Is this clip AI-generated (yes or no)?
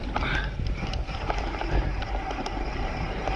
yes